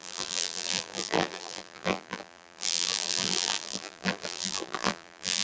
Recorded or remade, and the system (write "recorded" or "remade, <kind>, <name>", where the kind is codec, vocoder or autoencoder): remade, vocoder, BigVGAN v2